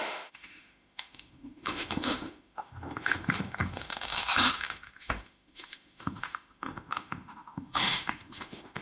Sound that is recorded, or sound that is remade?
remade